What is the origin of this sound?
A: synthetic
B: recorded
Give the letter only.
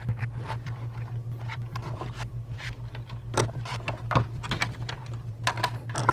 A